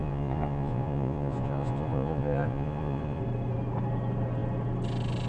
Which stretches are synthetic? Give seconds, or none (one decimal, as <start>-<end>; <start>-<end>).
0.0-3.2